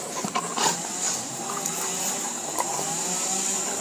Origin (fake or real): real